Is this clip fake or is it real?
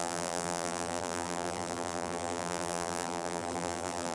fake